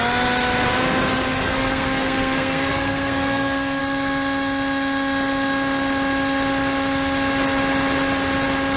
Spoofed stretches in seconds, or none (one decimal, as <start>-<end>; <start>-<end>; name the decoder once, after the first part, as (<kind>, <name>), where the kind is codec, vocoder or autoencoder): 1.4-3.8 (codec, SNAC)